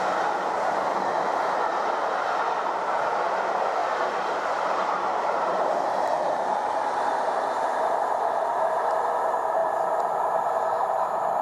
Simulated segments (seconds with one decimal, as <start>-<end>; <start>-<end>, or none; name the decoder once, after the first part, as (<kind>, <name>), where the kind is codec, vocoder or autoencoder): 3.8-6.6 (vocoder, BigVGAN v2)